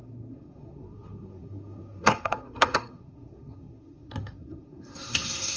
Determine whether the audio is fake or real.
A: fake